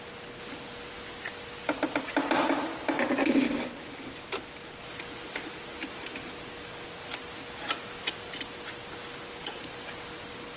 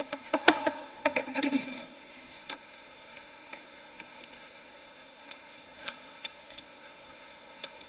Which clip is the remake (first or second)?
second